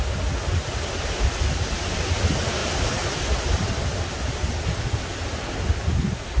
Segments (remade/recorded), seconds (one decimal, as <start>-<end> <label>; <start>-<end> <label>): 0.0-6.4 recorded